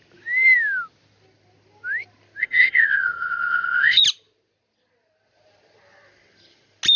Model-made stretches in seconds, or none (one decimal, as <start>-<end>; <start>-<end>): 2.4-4.0